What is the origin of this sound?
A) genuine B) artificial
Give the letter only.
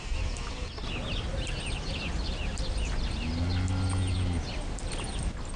A